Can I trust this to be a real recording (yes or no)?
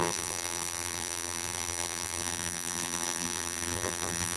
no